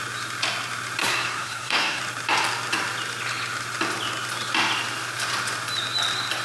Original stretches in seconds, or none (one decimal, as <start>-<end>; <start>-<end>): 0.0-1.0; 2.0-6.4